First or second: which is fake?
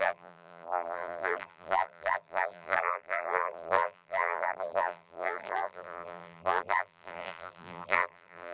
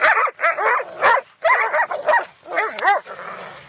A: first